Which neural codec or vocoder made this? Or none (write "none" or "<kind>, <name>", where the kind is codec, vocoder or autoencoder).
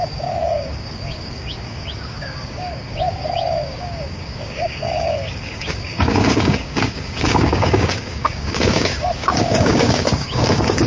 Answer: codec, DAC